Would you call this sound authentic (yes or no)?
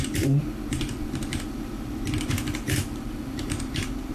no